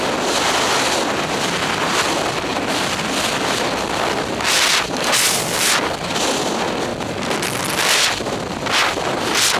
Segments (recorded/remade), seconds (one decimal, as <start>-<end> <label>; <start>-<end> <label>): 0.0-9.6 recorded

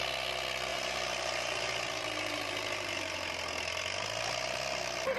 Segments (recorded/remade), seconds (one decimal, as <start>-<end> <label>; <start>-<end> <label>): 0.0-0.7 recorded; 0.7-3.3 remade; 3.3-5.2 recorded